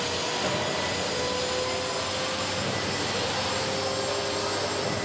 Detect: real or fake real